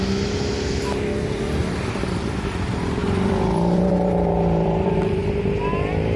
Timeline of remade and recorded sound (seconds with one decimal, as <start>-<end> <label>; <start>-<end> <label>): 0.0-1.6 recorded; 1.6-2.5 remade; 2.5-3.0 recorded; 3.0-6.2 remade